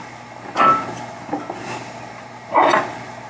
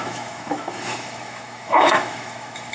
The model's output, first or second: second